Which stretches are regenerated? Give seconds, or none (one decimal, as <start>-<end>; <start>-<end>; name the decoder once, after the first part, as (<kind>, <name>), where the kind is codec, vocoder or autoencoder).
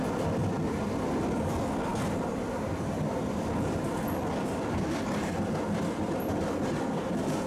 none